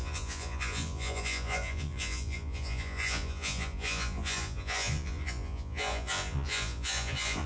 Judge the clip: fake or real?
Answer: fake